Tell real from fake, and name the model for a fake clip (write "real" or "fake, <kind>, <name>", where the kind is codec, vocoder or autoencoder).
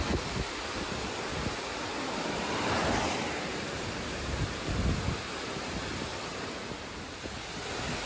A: real